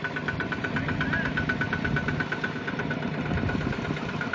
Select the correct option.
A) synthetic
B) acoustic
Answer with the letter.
B